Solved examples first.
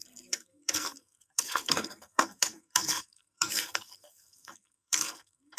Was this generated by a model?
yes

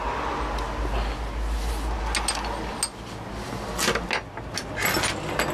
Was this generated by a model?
no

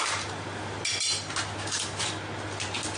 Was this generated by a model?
no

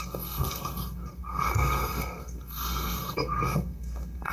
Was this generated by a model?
yes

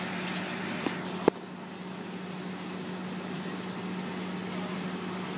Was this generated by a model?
no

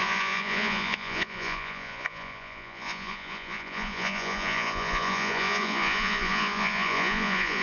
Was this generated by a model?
yes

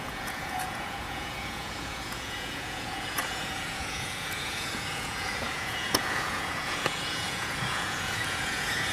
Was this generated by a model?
yes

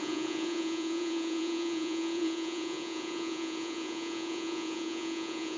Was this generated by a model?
yes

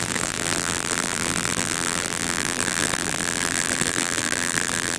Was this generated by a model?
yes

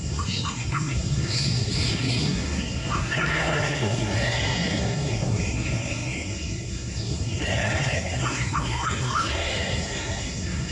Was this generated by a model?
yes